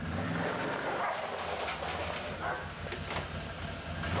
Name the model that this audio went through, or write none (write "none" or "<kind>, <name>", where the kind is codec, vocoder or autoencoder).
none